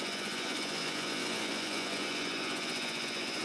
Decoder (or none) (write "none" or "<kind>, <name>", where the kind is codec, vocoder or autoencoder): vocoder, Vocos